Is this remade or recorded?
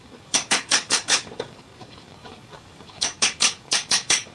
remade